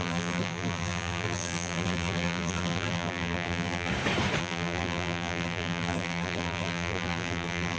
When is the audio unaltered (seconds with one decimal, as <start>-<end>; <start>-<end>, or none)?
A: 3.9-4.4